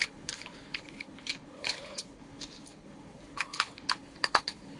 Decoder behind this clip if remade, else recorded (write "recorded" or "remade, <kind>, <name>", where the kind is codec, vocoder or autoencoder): remade, codec, HILCodec